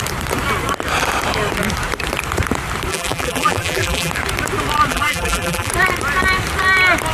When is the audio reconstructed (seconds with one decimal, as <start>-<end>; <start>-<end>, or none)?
2.9-4.1; 4.9-5.7